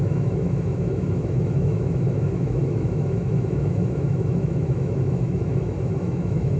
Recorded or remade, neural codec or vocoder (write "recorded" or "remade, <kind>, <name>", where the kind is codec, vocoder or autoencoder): remade, autoencoder, DAC-VAE